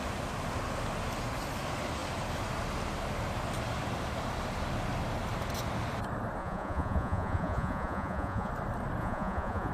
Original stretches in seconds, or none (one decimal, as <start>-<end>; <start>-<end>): 0.0-6.4; 8.5-9.0